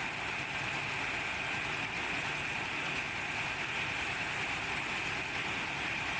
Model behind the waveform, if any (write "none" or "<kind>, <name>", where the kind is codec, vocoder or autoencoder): none